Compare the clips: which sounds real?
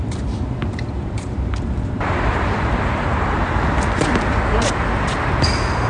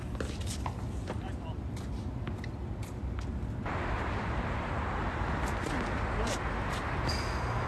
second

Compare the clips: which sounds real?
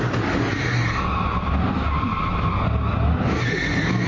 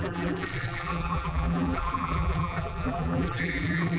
first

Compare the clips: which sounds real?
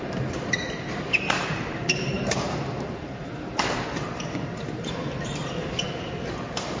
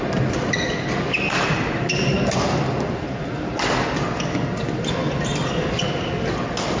second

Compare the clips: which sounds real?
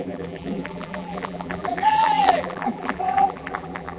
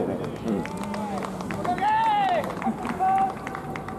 second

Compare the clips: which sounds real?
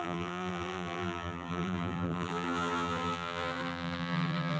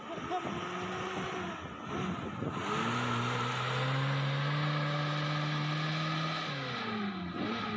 second